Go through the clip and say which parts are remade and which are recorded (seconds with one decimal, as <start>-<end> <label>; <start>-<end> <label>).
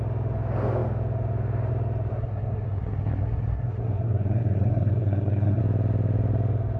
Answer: 0.0-2.1 recorded; 2.1-5.6 remade; 5.6-6.8 recorded